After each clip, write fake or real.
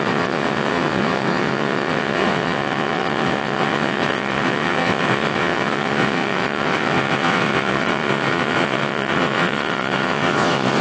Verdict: fake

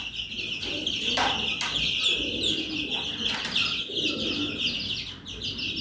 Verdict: real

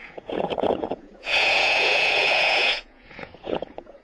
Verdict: fake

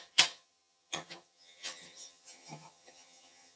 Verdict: fake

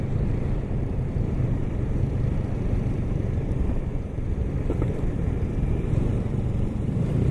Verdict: fake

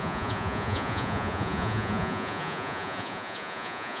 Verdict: fake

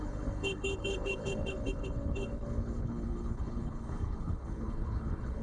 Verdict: fake